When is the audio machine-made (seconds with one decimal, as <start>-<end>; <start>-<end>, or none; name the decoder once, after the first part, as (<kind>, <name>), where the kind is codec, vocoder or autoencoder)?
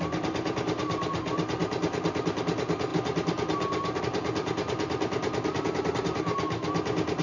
none